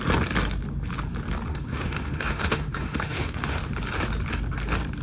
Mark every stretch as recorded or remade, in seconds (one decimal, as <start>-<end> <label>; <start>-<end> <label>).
0.0-1.5 recorded; 1.5-3.6 remade; 3.6-5.0 recorded